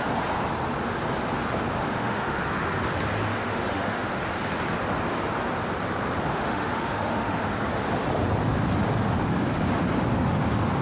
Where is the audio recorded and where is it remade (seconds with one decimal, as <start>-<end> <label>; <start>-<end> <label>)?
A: 0.0-1.8 recorded; 1.8-2.4 remade; 2.4-3.3 recorded; 3.3-4.2 remade; 4.2-6.3 recorded; 6.3-7.5 remade; 7.5-10.8 recorded